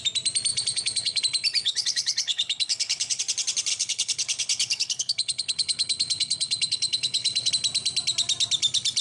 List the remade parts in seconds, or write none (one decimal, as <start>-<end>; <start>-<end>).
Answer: 0.5-1.2; 1.6-3.2; 3.7-7.5